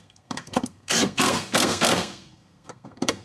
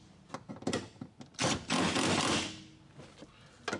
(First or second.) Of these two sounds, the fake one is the first